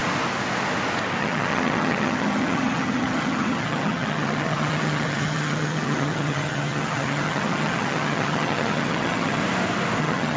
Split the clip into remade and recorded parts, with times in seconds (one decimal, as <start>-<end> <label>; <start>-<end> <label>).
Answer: 0.0-1.2 recorded; 1.2-9.4 remade; 9.4-10.0 recorded; 10.0-10.4 remade

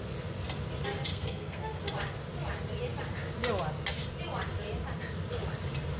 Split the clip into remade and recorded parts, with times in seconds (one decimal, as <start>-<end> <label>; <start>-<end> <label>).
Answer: 0.0-1.1 recorded; 1.1-1.8 remade; 1.8-6.0 recorded

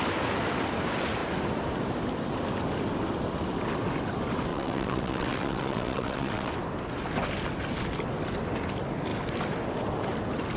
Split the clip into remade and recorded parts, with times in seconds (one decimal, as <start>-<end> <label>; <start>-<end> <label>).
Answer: 0.0-4.5 recorded; 4.5-6.5 remade; 6.5-10.6 recorded

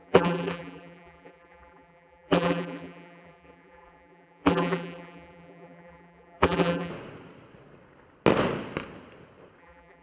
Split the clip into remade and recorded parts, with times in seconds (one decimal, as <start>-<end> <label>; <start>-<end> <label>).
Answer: 0.0-6.9 remade; 6.9-9.6 recorded; 9.6-10.0 remade

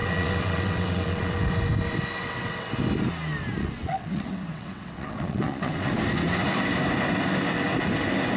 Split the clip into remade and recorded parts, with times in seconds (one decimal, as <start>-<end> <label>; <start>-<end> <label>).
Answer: 0.0-1.5 remade; 1.5-2.2 recorded; 2.2-2.7 remade; 2.7-3.6 recorded; 3.6-5.9 remade; 5.9-8.4 recorded

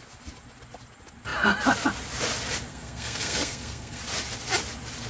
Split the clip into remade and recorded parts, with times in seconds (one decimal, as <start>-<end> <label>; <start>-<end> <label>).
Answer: 0.0-2.7 recorded; 2.7-4.0 remade; 4.0-5.1 recorded